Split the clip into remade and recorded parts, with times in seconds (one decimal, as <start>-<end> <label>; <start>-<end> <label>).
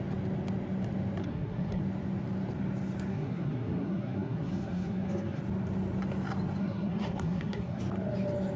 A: 0.0-1.2 recorded; 1.2-1.8 remade; 1.8-3.1 recorded; 3.1-5.4 remade; 5.4-6.6 recorded; 6.6-7.8 remade; 7.8-8.6 recorded